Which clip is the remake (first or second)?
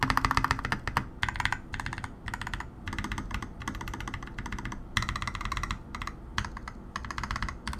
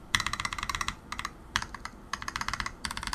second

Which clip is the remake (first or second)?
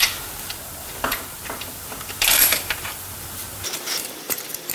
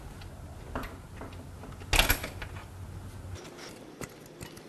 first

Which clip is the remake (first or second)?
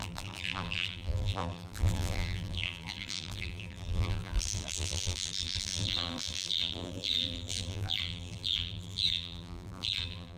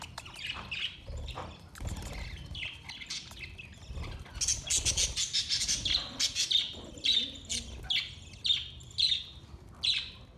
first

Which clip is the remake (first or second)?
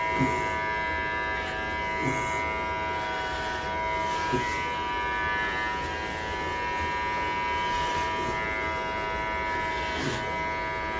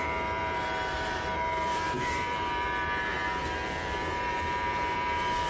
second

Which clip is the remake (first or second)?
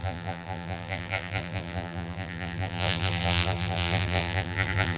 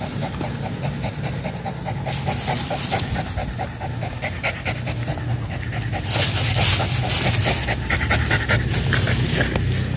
first